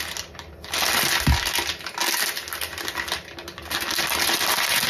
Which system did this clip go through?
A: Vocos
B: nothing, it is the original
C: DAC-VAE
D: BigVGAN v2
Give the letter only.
B